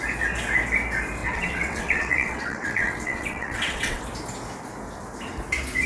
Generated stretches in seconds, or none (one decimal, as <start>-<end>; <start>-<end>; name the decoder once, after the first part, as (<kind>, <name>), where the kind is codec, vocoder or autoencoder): 1.2-4.0 (vocoder, WaveNeXt)